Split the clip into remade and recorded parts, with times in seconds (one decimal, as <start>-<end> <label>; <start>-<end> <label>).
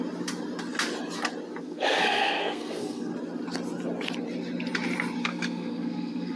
0.0-1.6 recorded; 1.6-3.1 remade; 3.1-5.2 recorded; 5.2-6.4 remade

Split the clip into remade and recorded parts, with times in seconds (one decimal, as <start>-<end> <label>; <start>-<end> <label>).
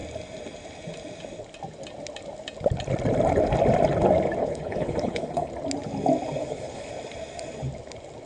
0.0-4.4 recorded; 4.4-5.5 remade; 5.5-6.4 recorded; 6.4-6.9 remade; 6.9-8.3 recorded